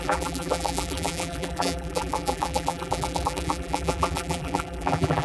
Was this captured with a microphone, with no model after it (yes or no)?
no